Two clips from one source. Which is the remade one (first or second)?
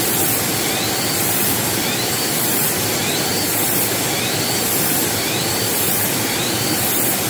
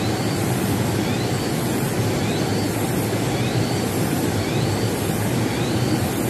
first